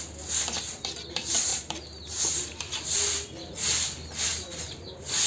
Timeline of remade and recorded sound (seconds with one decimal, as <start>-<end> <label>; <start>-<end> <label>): 0.0-1.5 recorded; 1.5-2.2 remade; 2.2-5.3 recorded